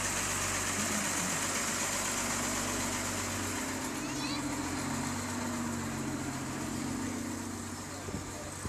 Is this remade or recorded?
recorded